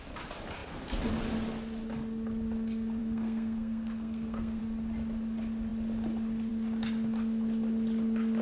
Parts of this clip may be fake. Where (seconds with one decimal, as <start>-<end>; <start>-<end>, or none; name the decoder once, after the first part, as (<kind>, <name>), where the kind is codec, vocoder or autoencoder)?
3.0-4.6 (codec, SNAC)

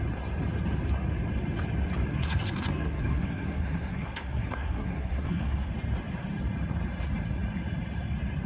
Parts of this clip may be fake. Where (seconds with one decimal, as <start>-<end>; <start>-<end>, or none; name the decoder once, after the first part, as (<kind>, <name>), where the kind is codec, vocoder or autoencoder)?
2.1-5.7 (codec, SNAC)

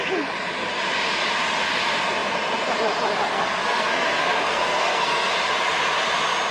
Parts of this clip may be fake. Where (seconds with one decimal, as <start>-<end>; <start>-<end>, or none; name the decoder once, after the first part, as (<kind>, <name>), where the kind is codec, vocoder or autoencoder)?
3.3-5.3 (codec, SNAC)

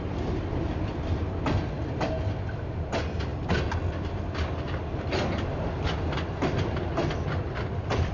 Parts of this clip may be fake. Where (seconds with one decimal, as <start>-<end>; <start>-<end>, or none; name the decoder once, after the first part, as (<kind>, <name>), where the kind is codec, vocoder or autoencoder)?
none

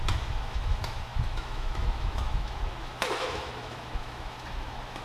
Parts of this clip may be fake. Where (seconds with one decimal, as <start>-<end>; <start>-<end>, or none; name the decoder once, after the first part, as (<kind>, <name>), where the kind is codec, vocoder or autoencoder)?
0.0-5.0 (autoencoder, DAC-VAE)

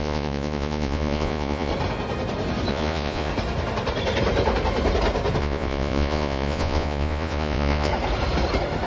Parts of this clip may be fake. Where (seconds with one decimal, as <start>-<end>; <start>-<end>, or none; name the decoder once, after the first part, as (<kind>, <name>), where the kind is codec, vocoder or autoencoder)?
0.0-1.7 (vocoder, Vocos); 2.7-3.3; 5.4-7.9